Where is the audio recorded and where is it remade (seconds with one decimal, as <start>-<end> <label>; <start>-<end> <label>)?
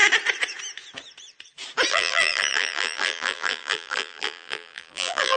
0.0-1.9 recorded; 1.9-5.4 remade